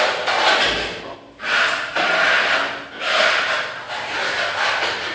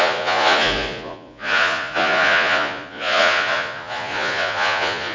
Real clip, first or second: first